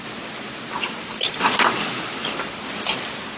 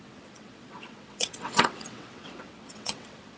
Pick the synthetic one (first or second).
second